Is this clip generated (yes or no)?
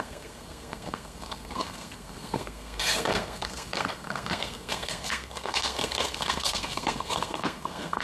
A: yes